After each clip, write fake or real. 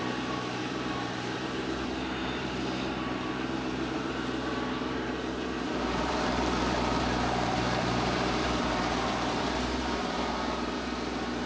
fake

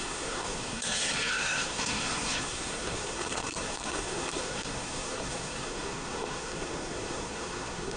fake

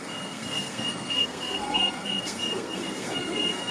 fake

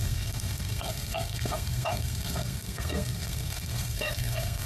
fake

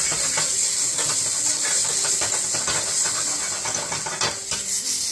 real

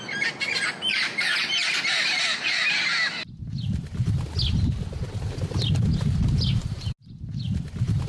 real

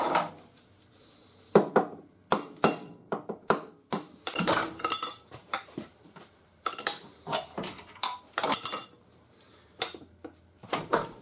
fake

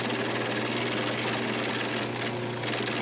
real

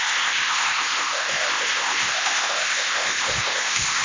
fake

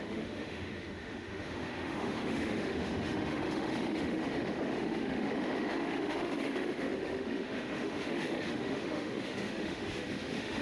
fake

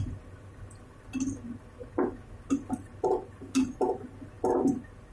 real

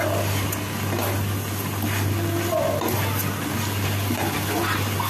real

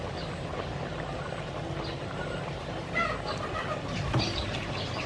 real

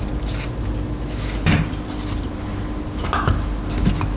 real